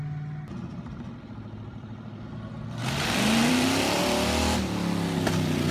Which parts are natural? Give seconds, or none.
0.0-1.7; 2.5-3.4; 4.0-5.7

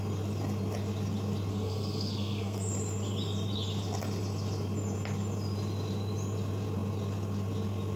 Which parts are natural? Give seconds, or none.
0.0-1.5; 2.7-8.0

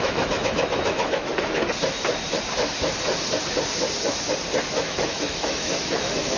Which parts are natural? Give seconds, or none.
1.3-4.7